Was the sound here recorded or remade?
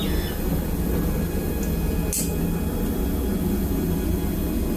recorded